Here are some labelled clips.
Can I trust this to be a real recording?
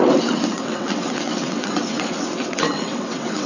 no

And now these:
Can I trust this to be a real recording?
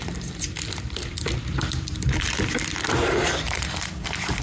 no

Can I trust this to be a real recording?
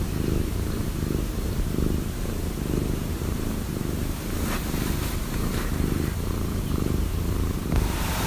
no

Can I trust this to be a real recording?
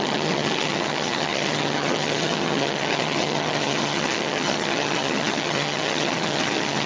no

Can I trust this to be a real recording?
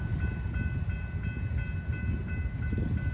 yes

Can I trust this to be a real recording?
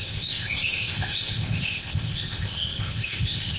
no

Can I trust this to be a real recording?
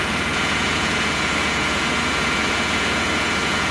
no